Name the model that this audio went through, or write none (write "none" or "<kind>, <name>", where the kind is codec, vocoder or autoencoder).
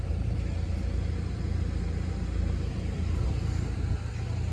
none